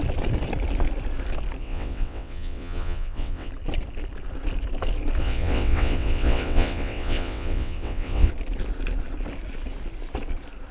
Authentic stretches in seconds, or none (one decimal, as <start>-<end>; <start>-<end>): 0.0-1.6; 3.5-5.2; 8.3-10.7